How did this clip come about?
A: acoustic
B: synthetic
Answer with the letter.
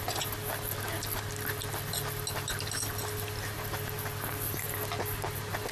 A